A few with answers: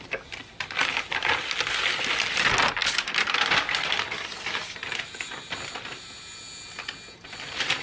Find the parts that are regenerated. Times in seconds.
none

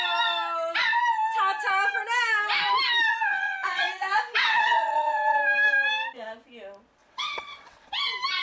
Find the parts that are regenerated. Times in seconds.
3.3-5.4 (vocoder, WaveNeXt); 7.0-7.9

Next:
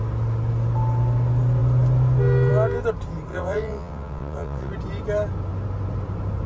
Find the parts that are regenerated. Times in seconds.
3.3-4.7 (vocoder, WaveNeXt)